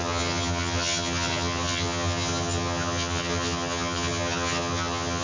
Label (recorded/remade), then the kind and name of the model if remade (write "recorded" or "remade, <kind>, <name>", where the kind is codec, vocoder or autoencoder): remade, vocoder, HiFi-GAN